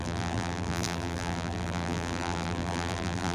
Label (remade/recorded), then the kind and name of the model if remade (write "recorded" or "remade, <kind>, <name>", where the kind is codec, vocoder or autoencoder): remade, vocoder, BigVGAN v2